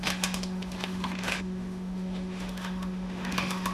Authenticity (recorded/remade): remade